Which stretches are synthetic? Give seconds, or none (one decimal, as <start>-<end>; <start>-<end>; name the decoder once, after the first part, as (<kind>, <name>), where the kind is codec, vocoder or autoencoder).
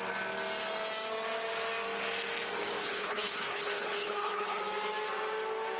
2.8-4.6 (codec, HILCodec)